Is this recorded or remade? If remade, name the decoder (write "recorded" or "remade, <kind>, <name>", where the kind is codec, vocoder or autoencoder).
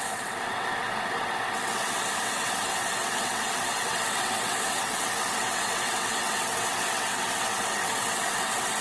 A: remade, vocoder, WaveNeXt